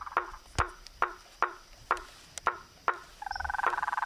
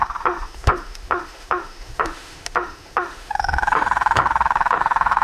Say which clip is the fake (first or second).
second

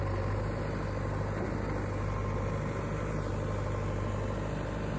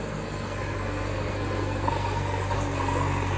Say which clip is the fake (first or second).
second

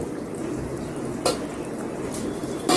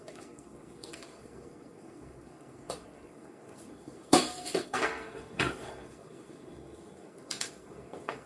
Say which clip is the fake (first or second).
second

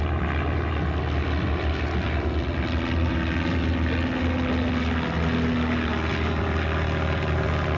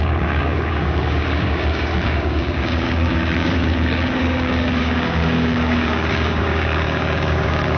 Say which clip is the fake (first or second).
second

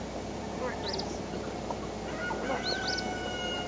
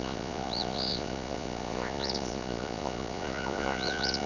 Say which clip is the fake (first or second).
second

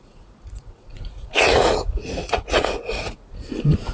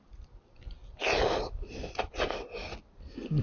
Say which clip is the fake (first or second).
first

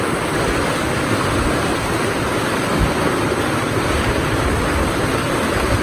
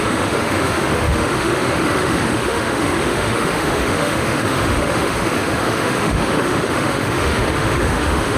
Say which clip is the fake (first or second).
second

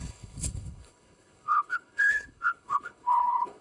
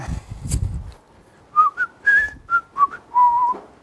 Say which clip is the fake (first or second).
first